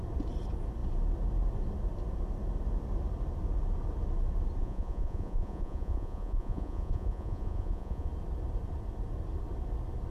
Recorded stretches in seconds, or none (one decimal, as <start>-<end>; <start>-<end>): 0.0-4.6; 8.1-10.1